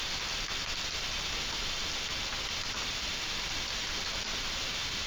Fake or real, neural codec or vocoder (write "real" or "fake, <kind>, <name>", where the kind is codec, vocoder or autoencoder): real